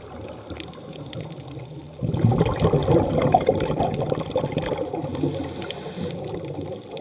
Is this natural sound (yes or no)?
yes